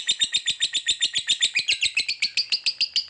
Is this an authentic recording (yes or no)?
yes